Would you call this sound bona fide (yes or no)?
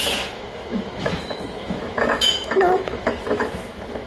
no